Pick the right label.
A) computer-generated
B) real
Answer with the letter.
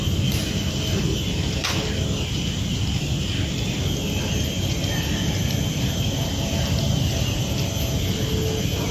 B